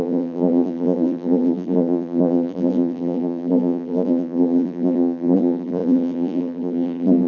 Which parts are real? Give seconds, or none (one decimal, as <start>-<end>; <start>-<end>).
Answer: none